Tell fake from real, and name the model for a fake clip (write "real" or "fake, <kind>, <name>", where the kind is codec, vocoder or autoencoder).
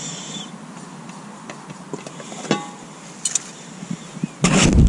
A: real